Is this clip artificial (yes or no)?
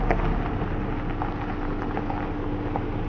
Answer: no